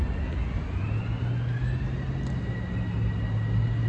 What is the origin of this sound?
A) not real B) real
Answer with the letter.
B